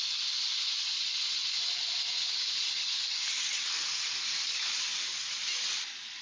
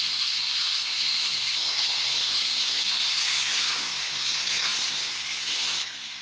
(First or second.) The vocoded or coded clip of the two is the second